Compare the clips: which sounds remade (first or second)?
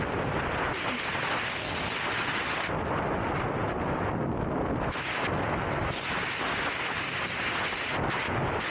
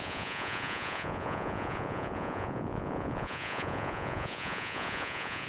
second